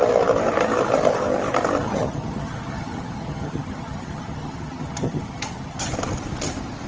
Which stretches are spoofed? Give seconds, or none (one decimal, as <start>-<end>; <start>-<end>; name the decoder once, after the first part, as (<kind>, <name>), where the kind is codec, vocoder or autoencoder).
1.8-5.9 (vocoder, HiFi-GAN)